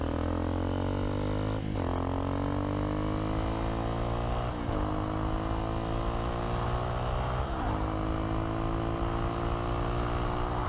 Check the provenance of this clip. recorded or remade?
recorded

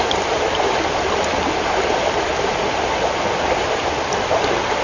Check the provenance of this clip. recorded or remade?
recorded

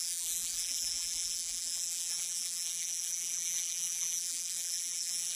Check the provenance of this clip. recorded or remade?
remade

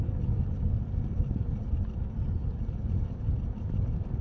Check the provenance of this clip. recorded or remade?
remade